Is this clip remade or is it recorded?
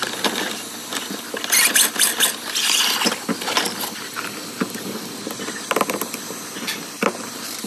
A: recorded